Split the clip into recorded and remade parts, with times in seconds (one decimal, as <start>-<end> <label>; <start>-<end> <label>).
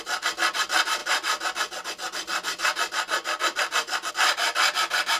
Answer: 0.0-5.2 recorded